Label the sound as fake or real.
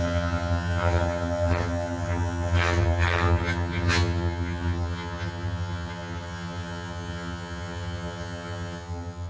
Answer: fake